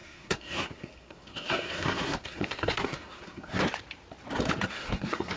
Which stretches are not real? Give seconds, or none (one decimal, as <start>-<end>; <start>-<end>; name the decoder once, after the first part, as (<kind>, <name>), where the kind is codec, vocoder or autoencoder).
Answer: 0.0-3.6 (codec, SNAC); 4.7-5.4